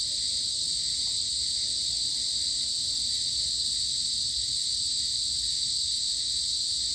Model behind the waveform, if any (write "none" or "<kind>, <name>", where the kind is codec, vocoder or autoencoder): none